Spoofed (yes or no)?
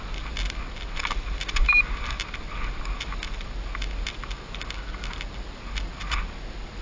no